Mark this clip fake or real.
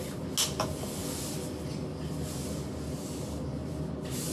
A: real